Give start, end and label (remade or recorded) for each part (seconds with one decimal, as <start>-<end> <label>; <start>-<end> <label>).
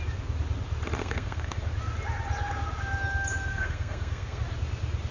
0.0-1.0 recorded; 1.0-1.6 remade; 1.6-3.5 recorded; 3.5-4.4 remade; 4.4-5.1 recorded